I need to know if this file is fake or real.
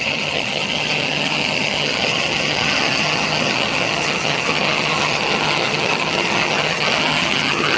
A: fake